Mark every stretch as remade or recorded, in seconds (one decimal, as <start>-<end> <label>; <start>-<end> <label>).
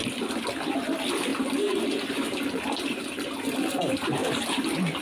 0.0-5.0 recorded